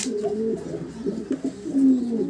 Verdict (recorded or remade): recorded